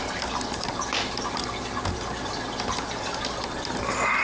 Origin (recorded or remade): recorded